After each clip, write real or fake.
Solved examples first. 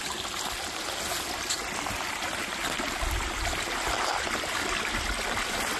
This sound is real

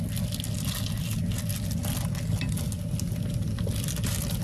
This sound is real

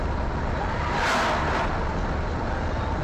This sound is real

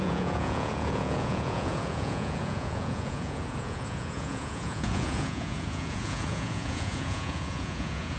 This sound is fake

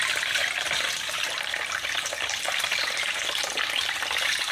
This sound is fake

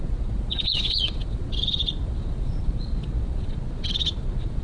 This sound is fake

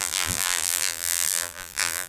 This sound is fake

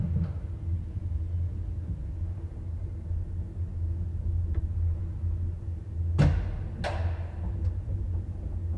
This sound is real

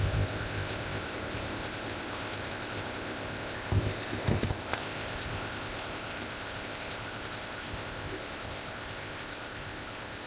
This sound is fake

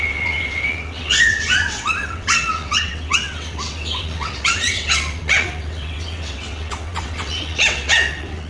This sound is fake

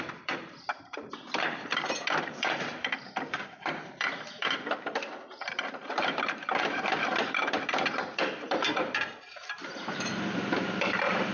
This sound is fake